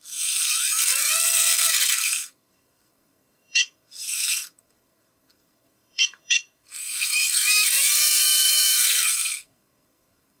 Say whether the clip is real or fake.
fake